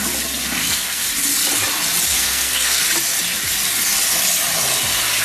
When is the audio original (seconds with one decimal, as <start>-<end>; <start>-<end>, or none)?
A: 0.0-0.6; 1.1-2.1; 2.8-5.2